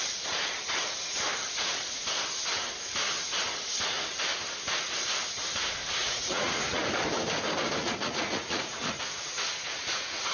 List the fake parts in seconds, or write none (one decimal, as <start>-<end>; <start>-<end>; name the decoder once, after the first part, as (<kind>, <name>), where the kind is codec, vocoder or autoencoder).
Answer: 6.0-6.8 (vocoder, Vocos); 7.8-10.3

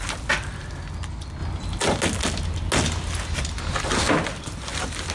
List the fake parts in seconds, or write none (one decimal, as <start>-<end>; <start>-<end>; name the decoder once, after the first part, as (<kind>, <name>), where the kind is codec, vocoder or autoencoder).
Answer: none